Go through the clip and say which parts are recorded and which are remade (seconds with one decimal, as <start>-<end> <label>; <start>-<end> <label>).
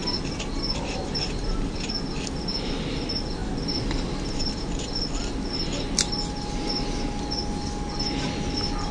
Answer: 0.0-1.9 remade; 1.9-3.4 recorded; 3.4-4.6 remade; 4.6-8.9 recorded